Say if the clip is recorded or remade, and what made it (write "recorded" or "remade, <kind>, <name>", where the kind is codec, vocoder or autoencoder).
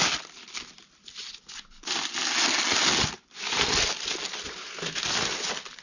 recorded